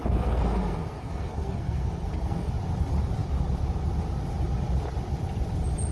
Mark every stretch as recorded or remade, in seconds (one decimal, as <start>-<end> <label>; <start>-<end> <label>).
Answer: 0.0-2.5 remade; 2.5-5.9 recorded